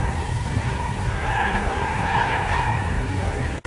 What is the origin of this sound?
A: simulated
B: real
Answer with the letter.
A